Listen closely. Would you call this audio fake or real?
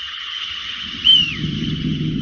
fake